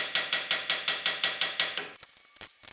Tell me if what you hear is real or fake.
real